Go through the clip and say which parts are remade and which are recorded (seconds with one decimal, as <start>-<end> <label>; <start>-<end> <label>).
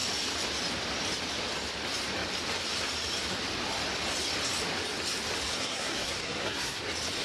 0.0-5.6 recorded; 5.6-6.8 remade; 6.8-7.2 recorded